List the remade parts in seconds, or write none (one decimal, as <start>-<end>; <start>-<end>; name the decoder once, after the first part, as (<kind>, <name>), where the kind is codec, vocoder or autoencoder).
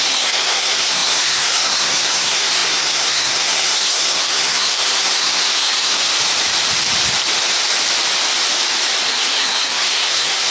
0.0-6.1 (codec, SNAC); 9.1-10.5